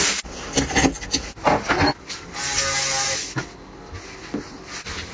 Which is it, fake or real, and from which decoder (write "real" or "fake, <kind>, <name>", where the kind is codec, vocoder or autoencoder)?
real